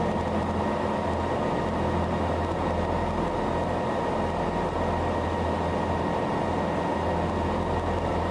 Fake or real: real